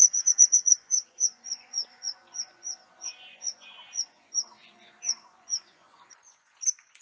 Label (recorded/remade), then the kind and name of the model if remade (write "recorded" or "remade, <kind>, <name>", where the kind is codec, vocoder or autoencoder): remade, vocoder, Vocos